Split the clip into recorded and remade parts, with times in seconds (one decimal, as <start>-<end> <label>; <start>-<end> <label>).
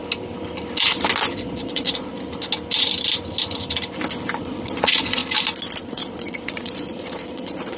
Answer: 0.0-1.3 recorded; 1.3-2.1 remade; 2.1-4.4 recorded; 4.4-5.2 remade; 5.2-5.8 recorded; 5.8-7.8 remade